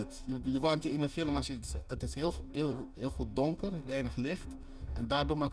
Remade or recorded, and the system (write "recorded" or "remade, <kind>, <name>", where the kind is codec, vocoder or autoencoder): remade, codec, DAC